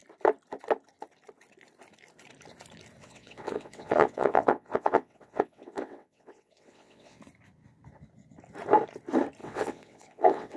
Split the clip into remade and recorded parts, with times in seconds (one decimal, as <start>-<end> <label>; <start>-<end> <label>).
0.0-3.0 recorded; 3.0-7.2 remade; 7.2-9.4 recorded; 9.4-10.6 remade